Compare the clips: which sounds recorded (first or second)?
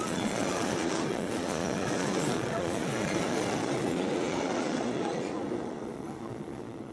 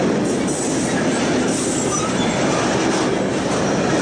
second